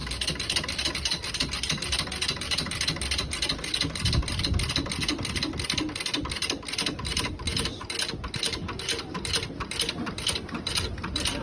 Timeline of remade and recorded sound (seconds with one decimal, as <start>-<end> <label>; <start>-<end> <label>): 0.0-11.4 recorded